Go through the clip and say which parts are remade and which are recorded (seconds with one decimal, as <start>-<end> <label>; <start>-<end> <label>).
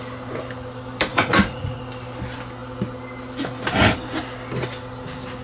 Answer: 0.0-1.1 recorded; 1.1-1.8 remade; 1.8-5.4 recorded